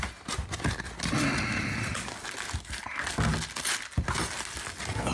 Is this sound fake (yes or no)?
no